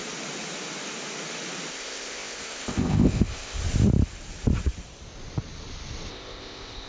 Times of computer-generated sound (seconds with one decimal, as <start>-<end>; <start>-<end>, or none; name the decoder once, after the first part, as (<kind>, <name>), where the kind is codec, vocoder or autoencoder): 1.7-3.6 (codec, ZipCodec); 6.1-6.9